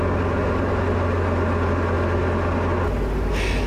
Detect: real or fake real